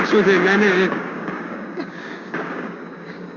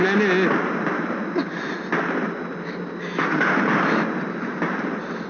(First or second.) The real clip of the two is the second